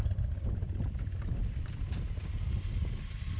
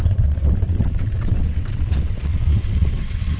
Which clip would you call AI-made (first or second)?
second